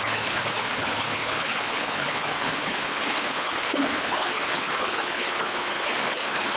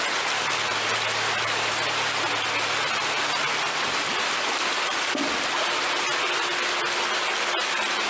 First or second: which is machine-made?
first